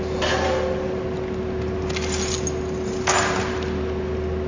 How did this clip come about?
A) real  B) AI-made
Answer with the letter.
A